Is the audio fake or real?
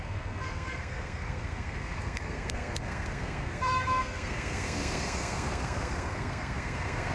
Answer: fake